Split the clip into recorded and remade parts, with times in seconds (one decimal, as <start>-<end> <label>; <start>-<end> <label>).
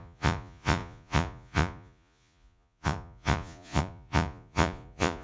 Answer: 0.0-5.2 remade